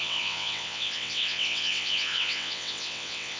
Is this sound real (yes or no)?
no